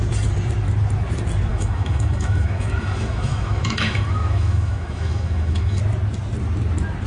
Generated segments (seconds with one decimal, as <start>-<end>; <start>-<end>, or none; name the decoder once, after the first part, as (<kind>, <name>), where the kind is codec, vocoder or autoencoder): 1.5-5.8 (autoencoder, DAC-VAE)